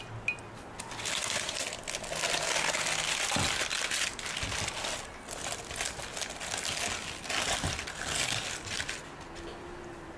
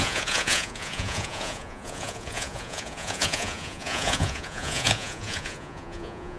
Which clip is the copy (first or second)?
second